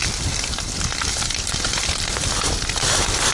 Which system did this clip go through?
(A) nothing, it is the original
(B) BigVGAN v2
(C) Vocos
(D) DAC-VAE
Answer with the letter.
A